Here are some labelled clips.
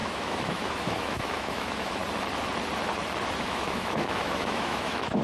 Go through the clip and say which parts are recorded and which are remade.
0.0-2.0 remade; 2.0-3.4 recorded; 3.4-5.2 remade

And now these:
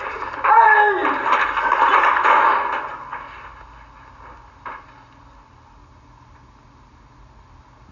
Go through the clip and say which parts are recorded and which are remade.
0.0-7.9 recorded

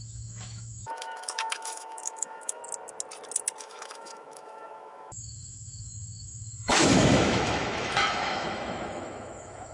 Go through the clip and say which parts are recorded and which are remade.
0.0-2.6 remade; 2.6-3.6 recorded; 3.6-9.7 remade

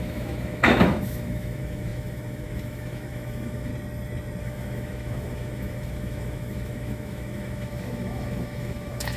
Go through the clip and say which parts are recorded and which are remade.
0.0-3.7 remade; 3.7-4.4 recorded; 4.4-9.2 remade

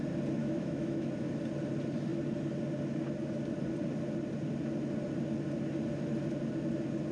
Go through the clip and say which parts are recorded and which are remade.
0.0-0.4 recorded; 0.4-1.1 remade; 1.1-7.1 recorded

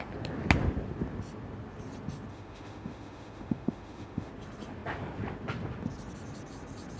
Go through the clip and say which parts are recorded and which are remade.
0.0-2.3 recorded; 2.3-4.3 remade; 4.3-7.0 recorded

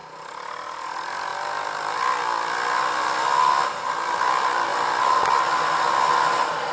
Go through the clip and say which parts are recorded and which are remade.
0.0-6.7 recorded

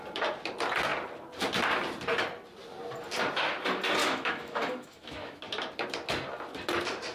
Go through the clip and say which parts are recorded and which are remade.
0.0-4.0 recorded; 4.0-5.4 remade; 5.4-7.1 recorded